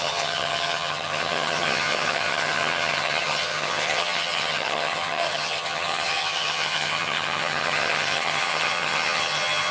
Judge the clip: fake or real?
fake